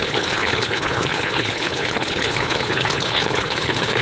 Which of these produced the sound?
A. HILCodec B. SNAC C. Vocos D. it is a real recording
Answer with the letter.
A